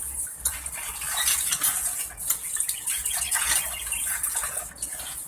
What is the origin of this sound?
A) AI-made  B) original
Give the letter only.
A